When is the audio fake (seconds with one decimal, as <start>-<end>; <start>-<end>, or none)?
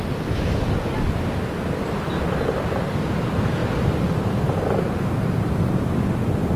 3.6-6.1